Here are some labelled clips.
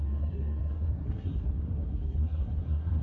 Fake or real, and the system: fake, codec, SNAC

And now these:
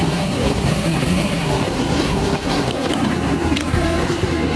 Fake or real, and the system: fake, codec, SNAC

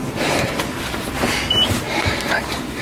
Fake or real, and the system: real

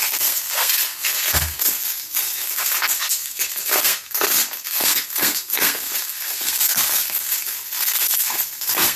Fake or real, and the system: fake, codec, SNAC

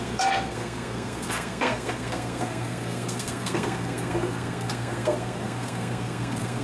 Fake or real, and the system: fake, codec, SNAC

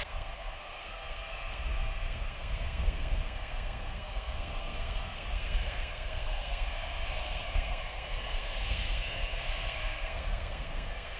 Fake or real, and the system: fake, codec, SNAC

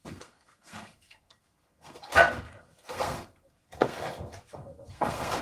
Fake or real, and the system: fake, codec, SNAC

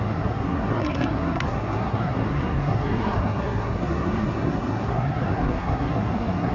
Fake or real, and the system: fake, codec, SNAC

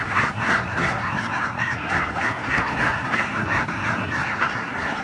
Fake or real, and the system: fake, codec, SNAC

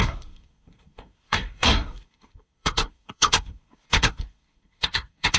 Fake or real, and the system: fake, codec, SNAC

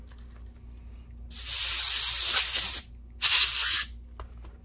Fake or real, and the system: real